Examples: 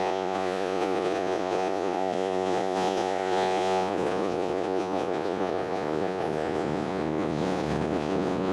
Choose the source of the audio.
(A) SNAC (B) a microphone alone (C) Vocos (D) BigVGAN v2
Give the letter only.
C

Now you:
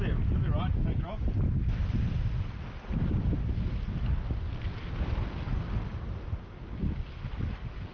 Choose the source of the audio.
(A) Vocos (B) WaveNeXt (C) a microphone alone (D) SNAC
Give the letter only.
C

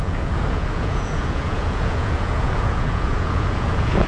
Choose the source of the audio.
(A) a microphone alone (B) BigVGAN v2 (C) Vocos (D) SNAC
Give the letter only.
C